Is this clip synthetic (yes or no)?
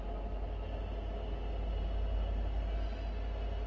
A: no